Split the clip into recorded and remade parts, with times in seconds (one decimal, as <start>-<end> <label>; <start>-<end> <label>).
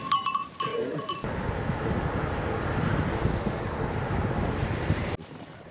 0.0-5.7 recorded